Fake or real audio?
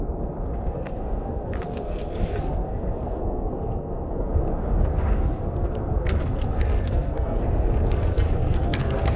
fake